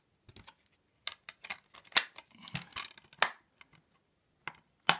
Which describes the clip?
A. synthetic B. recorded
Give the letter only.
B